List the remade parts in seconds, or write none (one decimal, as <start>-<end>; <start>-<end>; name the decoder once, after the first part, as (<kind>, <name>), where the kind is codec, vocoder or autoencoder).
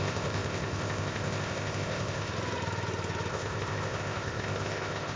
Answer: 0.0-2.3 (codec, ZipCodec); 3.3-5.2